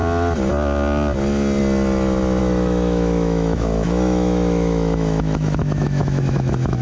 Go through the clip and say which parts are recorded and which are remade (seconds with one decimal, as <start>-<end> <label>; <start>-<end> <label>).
0.0-2.4 recorded; 2.4-6.8 remade